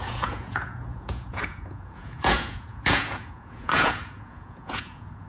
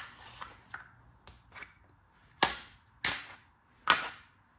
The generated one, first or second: first